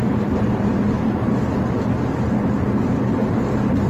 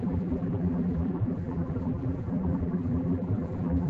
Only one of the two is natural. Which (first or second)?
first